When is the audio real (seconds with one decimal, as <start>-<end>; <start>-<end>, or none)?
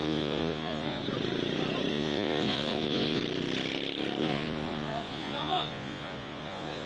1.0-1.9; 3.2-4.2